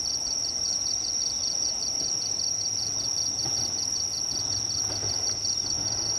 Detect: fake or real real